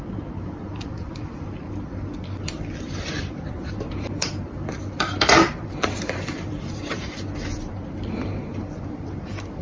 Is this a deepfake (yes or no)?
yes